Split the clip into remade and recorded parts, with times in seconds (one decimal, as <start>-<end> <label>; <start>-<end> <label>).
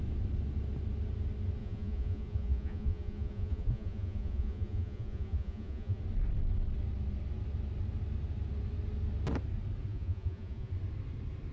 0.0-1.6 recorded; 1.6-6.0 remade; 6.0-9.9 recorded; 9.9-10.7 remade; 10.7-11.5 recorded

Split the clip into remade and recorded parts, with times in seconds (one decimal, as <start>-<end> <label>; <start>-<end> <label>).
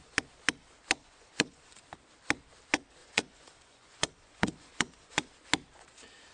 0.0-1.0 recorded; 1.0-1.8 remade; 1.8-3.0 recorded; 3.0-5.3 remade; 5.3-6.3 recorded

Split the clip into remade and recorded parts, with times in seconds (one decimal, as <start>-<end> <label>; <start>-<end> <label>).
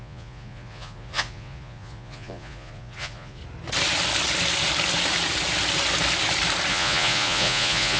0.0-3.4 remade; 3.4-6.7 recorded; 6.7-8.0 remade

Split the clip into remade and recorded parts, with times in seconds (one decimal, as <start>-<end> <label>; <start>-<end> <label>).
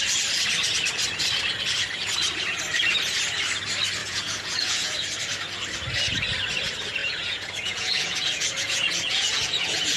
0.0-4.0 recorded; 4.0-5.1 remade; 5.1-7.0 recorded; 7.0-10.0 remade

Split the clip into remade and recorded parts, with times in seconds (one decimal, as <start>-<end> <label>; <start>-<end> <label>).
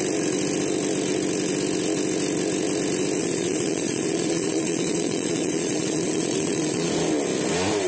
0.0-3.2 recorded; 3.2-6.9 remade; 6.9-7.9 recorded